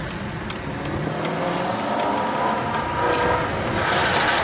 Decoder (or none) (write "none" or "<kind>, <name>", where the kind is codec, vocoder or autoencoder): none